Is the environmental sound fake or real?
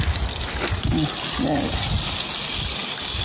real